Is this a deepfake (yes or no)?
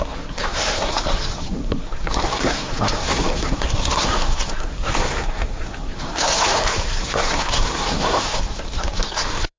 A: yes